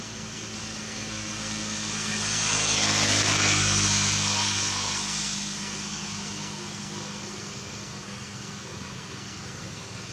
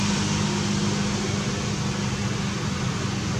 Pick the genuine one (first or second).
second